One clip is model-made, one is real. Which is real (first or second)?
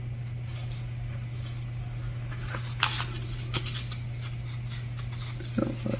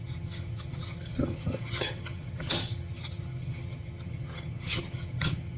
first